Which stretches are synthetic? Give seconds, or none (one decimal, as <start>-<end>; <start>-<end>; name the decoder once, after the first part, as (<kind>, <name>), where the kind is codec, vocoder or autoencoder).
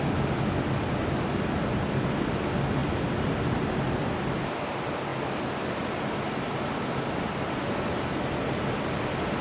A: none